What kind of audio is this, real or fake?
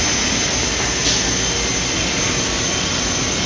real